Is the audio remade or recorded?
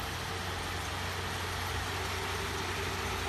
recorded